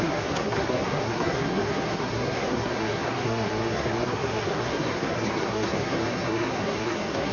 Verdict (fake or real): fake